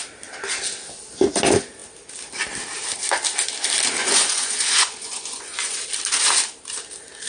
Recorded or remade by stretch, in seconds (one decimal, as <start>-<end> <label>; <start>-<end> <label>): 0.0-4.0 recorded; 4.0-5.8 remade; 5.8-7.3 recorded